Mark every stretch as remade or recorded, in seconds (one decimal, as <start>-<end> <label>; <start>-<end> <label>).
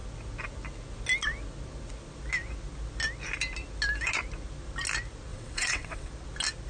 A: 0.0-5.3 recorded; 5.3-6.1 remade; 6.1-6.7 recorded